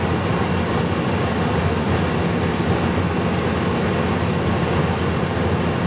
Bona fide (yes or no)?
yes